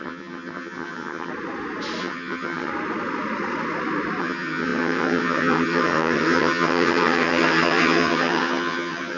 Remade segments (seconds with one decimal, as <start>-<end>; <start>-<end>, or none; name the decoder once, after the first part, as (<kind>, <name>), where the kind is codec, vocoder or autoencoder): 0.0-1.3 (vocoder, HiFi-GAN); 2.0-2.7; 4.2-9.2